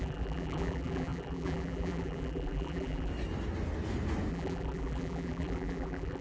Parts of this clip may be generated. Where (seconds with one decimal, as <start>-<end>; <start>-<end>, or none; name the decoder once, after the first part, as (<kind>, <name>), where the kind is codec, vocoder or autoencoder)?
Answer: 0.0-3.1 (vocoder, BigVGAN v2); 4.3-6.2